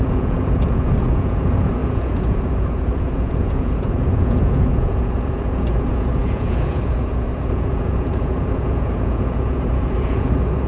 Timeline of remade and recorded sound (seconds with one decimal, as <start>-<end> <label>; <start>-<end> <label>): 0.0-10.7 remade